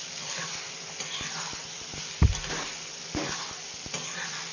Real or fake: real